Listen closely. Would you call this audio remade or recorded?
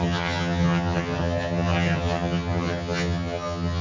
remade